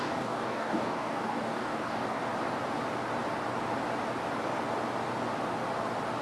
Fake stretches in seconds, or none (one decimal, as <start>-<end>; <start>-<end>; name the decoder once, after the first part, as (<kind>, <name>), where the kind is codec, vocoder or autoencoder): 0.0-2.2 (codec, DAC)

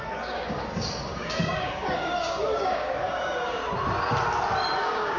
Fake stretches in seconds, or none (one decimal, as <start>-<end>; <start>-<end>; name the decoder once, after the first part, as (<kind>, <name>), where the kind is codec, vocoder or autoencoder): 0.0-3.6 (codec, DAC); 4.8-5.2

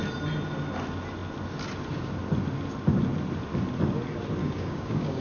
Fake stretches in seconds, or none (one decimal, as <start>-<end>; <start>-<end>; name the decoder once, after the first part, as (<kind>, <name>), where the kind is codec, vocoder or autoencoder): 4.4-5.2 (codec, DAC)